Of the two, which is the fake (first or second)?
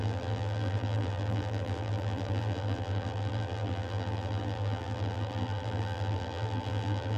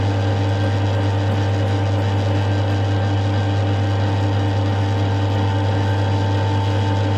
first